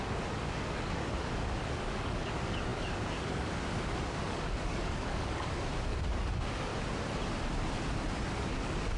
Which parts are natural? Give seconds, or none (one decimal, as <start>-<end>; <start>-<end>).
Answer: 6.7-8.4